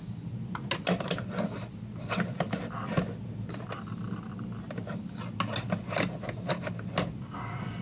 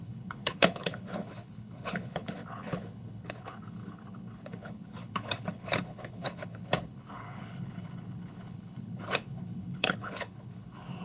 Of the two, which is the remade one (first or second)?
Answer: second